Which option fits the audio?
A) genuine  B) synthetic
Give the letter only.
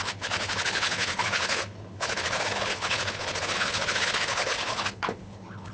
B